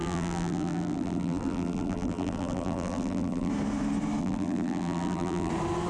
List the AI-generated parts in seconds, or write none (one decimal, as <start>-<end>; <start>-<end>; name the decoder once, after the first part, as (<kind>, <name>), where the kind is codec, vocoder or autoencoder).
0.0-3.5 (vocoder, BigVGAN v2); 4.2-5.5